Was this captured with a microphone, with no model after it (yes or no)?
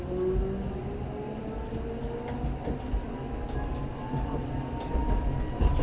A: yes